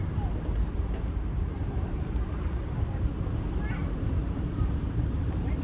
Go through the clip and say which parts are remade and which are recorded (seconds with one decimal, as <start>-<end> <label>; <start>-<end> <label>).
0.0-1.4 recorded; 1.4-3.1 remade; 3.1-3.8 recorded; 3.8-5.6 remade